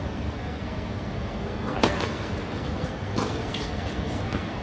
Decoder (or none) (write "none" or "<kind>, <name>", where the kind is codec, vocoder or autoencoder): codec, SNAC